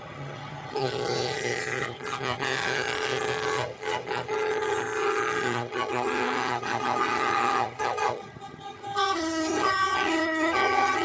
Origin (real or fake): fake